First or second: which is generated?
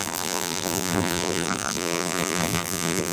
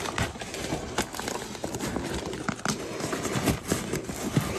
first